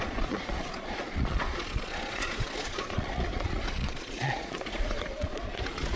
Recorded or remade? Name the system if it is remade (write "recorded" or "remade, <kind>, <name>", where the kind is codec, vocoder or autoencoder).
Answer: remade, vocoder, Vocos